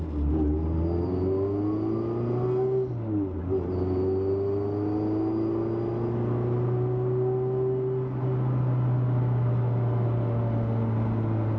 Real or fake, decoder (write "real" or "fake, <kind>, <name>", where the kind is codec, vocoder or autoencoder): real